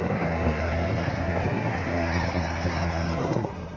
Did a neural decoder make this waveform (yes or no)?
yes